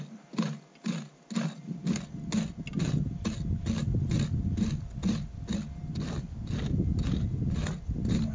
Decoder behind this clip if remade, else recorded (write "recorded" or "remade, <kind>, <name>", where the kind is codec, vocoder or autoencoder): recorded